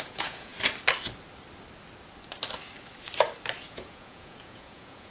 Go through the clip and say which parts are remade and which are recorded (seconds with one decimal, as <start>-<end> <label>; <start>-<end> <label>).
0.0-0.5 remade; 0.5-3.6 recorded; 3.6-5.1 remade